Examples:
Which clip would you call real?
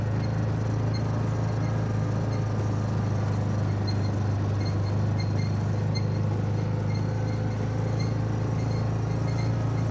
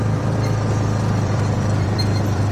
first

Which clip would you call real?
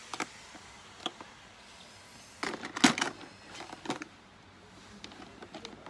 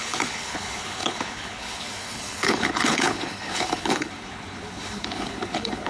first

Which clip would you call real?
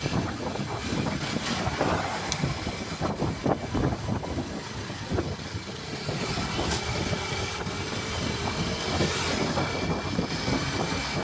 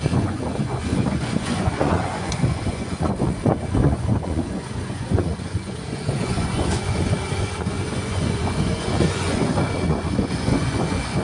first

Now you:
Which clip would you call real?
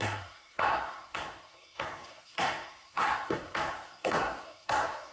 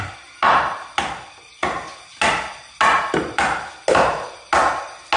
second